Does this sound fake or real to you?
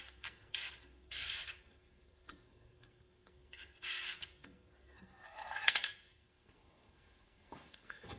fake